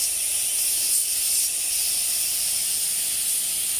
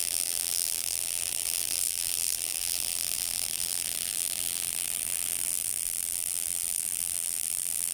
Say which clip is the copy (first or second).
second